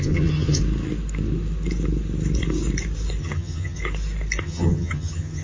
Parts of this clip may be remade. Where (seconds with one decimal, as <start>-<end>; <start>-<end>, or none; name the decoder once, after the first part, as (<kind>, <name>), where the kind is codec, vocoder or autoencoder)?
0.0-0.6 (vocoder, HiFi-GAN); 3.2-3.8; 4.4-5.4